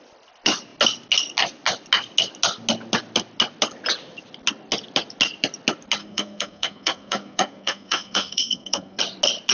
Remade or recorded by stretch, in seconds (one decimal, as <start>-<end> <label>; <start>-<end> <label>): 0.0-6.0 recorded; 6.0-9.0 remade; 9.0-9.5 recorded